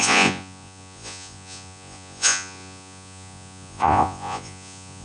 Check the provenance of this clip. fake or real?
fake